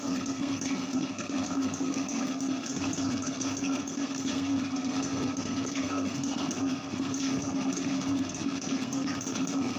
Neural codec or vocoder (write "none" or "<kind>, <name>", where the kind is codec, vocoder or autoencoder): codec, SNAC